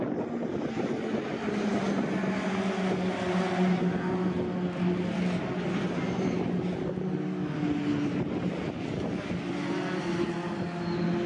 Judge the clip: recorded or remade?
recorded